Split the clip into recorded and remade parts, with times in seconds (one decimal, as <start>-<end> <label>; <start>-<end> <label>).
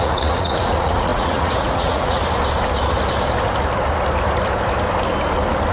0.0-2.2 remade; 2.2-5.7 recorded